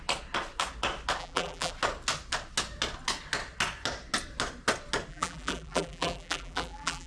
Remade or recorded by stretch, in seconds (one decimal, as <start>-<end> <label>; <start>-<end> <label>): 0.0-1.2 recorded; 1.2-1.7 remade; 1.7-5.1 recorded; 5.1-7.1 remade